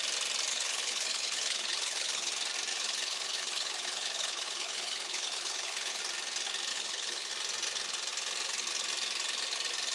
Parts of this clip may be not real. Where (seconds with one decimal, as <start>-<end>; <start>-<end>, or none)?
0.5-2.3; 2.7-6.0; 6.7-7.3